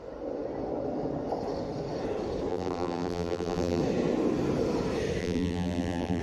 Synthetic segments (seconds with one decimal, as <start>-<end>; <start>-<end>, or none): 2.5-3.8; 5.2-6.2